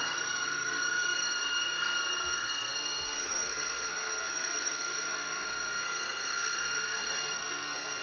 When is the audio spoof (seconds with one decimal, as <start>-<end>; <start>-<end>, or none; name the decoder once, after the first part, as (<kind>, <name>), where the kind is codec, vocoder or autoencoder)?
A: 0.0-8.0 (codec, SNAC)